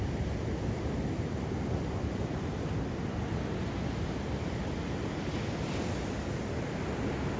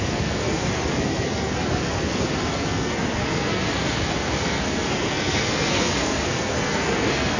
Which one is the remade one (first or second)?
second